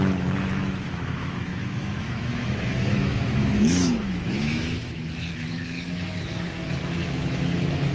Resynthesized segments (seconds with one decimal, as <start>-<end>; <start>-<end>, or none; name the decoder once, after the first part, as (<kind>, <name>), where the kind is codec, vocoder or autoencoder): 0.0-7.9 (autoencoder, DAC-VAE)